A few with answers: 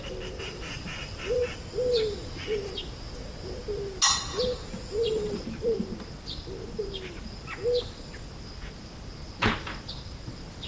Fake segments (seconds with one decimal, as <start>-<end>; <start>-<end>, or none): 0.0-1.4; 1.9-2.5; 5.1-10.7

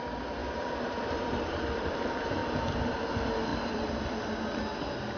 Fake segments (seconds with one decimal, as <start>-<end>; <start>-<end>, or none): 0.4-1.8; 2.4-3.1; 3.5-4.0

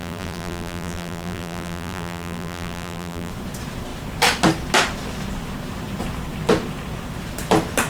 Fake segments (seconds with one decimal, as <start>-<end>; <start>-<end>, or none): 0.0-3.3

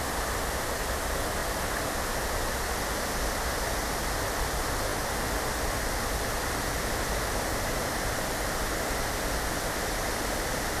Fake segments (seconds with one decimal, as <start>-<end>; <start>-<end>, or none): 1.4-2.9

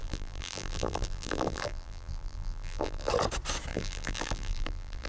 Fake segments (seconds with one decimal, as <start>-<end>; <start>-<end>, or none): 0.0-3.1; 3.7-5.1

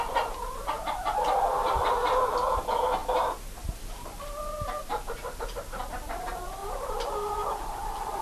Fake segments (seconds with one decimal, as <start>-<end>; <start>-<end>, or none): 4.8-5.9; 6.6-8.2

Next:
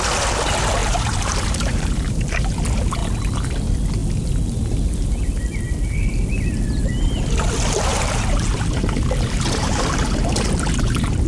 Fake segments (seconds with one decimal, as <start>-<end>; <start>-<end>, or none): 0.8-1.9; 7.9-11.3